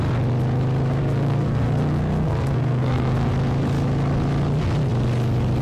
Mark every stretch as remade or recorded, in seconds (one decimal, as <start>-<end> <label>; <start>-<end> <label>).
0.0-1.0 recorded; 1.0-3.3 remade; 3.3-5.6 recorded